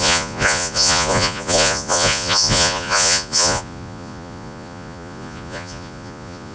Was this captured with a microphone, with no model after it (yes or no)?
no